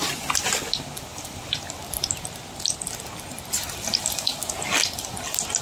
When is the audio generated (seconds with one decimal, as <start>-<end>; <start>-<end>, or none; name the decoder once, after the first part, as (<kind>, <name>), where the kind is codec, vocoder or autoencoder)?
1.1-1.8 (vocoder, BigVGAN v2)